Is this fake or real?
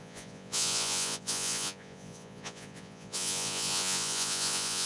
fake